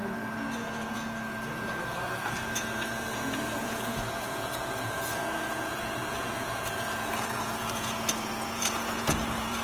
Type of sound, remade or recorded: remade